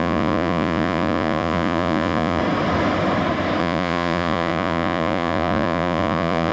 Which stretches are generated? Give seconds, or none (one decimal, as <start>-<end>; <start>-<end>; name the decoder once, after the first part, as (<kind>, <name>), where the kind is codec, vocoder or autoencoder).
0.0-2.4 (vocoder, Vocos); 3.6-6.5